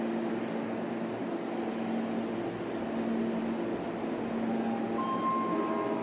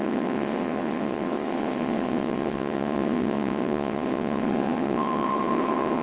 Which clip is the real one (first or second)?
first